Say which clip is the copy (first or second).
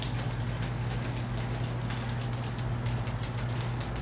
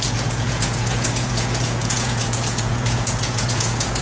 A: second